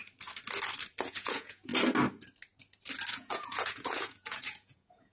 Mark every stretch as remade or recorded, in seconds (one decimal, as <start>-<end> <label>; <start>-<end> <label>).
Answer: 0.0-1.1 recorded; 1.1-1.7 remade; 1.7-3.1 recorded; 3.1-5.1 remade